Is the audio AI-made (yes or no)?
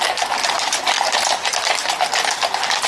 no